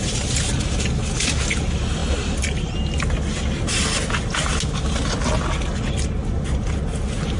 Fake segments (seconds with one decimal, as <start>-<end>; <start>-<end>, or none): none